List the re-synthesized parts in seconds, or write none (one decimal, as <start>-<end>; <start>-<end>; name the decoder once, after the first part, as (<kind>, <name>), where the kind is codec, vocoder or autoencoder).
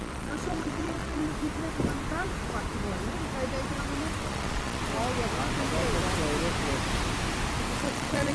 0.0-1.2 (vocoder, Vocos); 4.2-4.8; 7.8-8.3